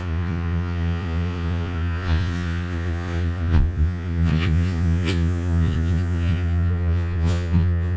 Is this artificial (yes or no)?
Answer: yes